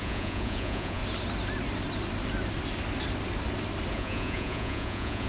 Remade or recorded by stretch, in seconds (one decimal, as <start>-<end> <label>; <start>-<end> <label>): 0.0-1.0 remade; 1.0-3.9 recorded; 3.9-5.3 remade